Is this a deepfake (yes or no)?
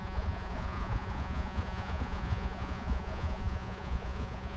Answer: yes